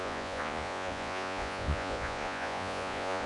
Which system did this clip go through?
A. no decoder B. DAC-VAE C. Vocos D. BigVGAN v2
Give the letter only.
C